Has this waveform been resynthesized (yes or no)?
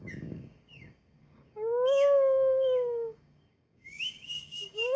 yes